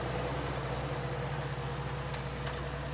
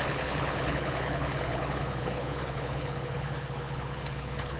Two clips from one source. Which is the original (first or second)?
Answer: first